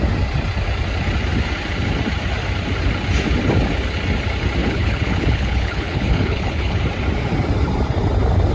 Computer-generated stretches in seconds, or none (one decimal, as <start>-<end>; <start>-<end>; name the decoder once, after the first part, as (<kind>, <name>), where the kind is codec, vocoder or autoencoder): 4.6-6.8 (codec, HILCodec)